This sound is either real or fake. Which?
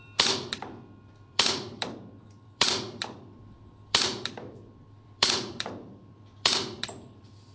fake